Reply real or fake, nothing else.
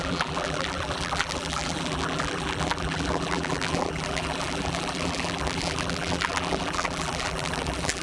fake